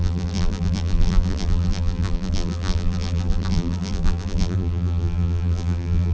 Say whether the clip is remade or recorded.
remade